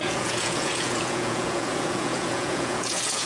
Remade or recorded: remade